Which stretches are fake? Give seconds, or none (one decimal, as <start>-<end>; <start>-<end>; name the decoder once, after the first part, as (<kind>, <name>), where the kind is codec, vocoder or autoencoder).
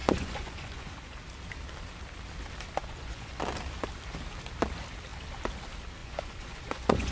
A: 0.0-1.2 (vocoder, Vocos); 2.8-3.4; 6.0-7.1